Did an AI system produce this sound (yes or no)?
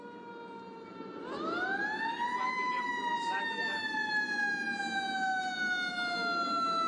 no